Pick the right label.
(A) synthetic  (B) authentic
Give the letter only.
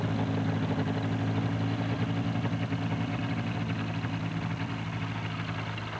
B